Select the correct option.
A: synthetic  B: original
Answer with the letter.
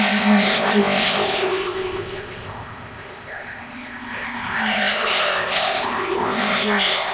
A